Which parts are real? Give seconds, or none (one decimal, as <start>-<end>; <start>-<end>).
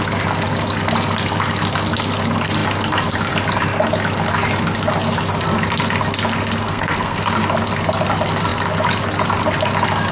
0.0-6.6; 7.3-10.1